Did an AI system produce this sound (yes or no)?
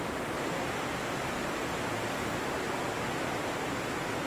no